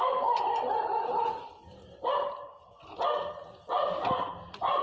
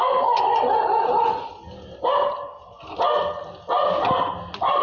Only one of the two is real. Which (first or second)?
second